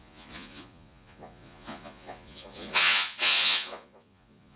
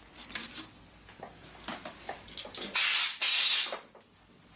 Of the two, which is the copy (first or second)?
first